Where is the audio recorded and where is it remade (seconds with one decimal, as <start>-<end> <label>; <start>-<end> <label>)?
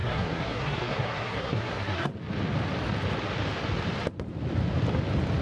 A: 0.0-2.1 remade; 2.1-5.4 recorded